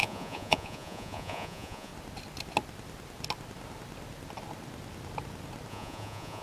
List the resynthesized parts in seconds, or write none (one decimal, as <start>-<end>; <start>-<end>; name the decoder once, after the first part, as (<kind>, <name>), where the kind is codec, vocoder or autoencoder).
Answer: 0.0-1.9 (vocoder, Vocos); 5.7-6.4